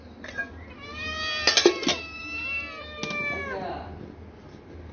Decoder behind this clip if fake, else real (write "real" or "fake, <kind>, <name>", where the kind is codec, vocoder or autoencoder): real